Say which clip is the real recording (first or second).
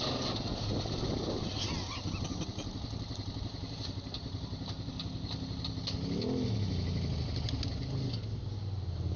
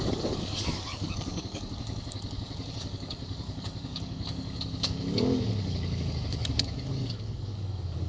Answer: first